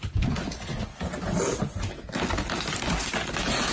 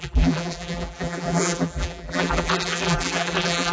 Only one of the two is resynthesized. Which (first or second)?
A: second